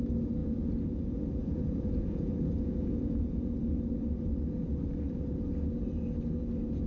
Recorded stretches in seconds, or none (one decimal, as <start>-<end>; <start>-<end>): 0.0-0.4; 3.6-6.9